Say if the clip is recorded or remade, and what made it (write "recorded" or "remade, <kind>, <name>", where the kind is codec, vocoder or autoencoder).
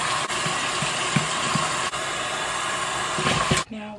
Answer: recorded